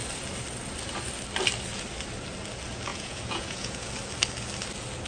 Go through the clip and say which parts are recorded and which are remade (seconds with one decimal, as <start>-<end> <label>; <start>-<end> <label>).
0.0-2.9 recorded; 2.9-3.9 remade; 3.9-5.1 recorded